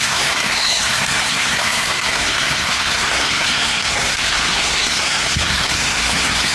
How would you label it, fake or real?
fake